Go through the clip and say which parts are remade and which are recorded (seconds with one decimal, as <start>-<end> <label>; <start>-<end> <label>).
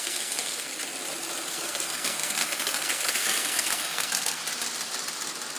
0.0-0.7 remade; 0.7-1.5 recorded; 1.5-4.4 remade; 4.4-5.6 recorded